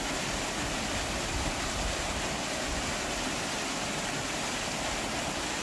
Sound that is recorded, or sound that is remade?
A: recorded